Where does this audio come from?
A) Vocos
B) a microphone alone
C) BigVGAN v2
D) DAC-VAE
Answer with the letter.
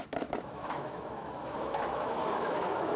D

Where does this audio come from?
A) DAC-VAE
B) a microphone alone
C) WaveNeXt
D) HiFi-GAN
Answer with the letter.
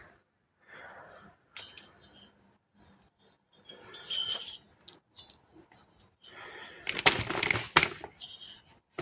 B